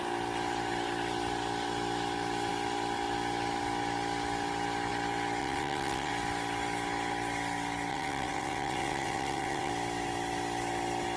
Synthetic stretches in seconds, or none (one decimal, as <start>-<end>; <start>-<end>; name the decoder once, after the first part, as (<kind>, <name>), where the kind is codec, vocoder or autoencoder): 5.4-6.1 (vocoder, WaveNeXt); 7.9-9.7